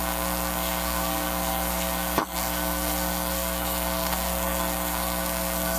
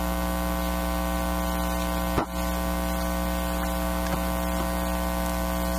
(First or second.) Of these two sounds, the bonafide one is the second